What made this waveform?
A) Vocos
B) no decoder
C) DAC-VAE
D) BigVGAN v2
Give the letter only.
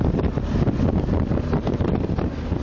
B